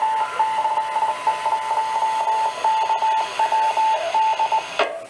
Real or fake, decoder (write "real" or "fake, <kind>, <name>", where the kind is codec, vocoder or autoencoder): real